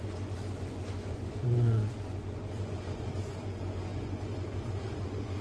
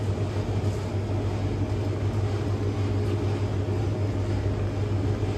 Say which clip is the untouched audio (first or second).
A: second